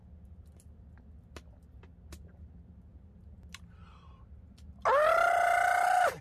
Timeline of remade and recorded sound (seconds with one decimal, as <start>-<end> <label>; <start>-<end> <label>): 0.0-6.2 recorded